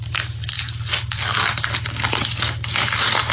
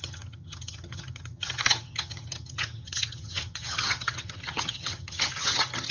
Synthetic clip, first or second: second